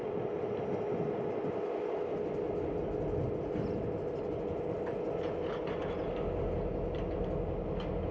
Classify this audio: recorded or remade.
recorded